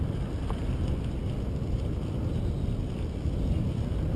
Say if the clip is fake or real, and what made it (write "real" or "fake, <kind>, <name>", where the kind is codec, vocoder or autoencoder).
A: real